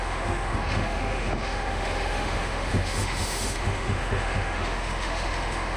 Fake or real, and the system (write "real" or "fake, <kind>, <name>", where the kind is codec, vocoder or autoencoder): fake, autoencoder, DAC-VAE